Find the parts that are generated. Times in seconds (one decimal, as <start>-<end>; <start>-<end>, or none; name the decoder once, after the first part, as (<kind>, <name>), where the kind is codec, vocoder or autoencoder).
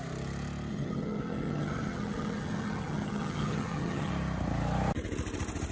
0.7-4.1 (vocoder, HiFi-GAN)